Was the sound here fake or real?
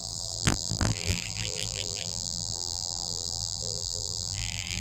fake